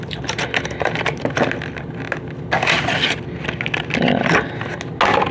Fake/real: real